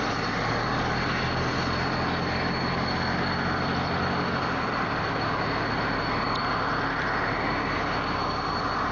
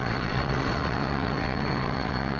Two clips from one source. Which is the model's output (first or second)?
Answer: second